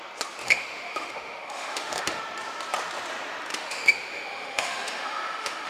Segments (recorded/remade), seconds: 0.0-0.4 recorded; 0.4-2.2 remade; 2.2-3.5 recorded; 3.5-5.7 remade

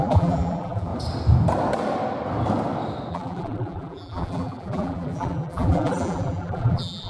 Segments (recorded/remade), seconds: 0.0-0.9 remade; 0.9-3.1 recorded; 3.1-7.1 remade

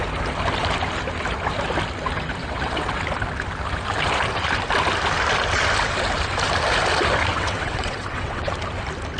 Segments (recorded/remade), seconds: 0.0-2.4 recorded; 2.4-2.9 remade; 2.9-7.3 recorded; 7.3-8.5 remade; 8.5-9.2 recorded

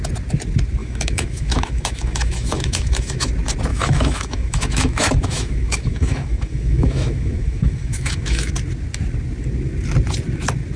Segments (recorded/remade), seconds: 0.0-0.8 recorded; 0.8-3.3 remade; 3.3-3.7 recorded; 3.7-8.5 remade; 8.5-10.8 recorded